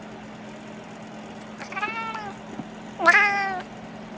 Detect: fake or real real